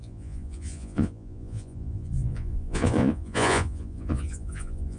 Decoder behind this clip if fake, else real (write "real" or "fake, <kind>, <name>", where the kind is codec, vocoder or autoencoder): fake, vocoder, Vocos